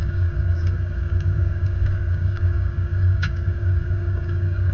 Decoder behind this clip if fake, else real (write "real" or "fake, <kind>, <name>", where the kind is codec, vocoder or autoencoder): fake, codec, DAC